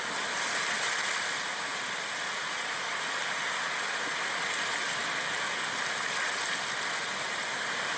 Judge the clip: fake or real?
real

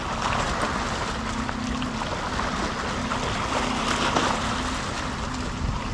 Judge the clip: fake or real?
real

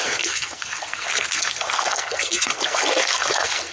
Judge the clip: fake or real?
fake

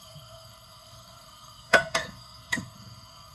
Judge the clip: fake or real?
fake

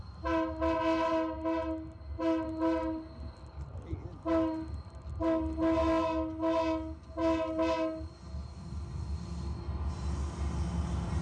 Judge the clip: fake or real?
real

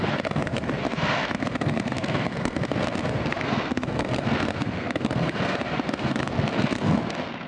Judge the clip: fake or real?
fake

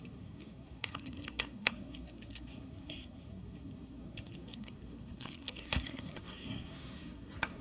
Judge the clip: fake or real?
fake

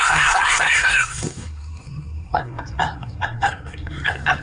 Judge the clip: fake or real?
fake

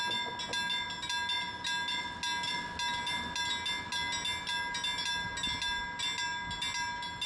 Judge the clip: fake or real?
real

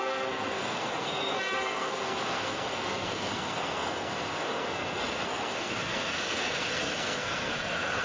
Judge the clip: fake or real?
fake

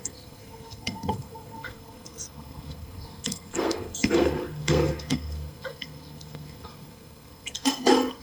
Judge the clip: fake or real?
fake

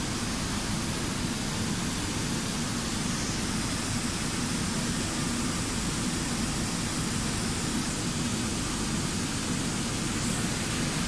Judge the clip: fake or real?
real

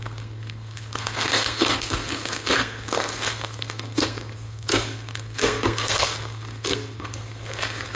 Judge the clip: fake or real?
fake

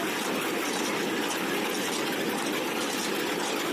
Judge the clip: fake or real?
real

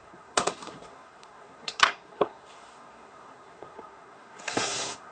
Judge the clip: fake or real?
fake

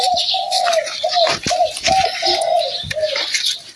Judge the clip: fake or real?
real